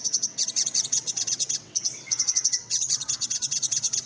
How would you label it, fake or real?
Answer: fake